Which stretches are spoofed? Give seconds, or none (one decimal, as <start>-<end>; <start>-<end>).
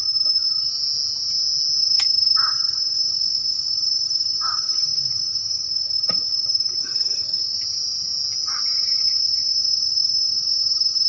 6.8-7.4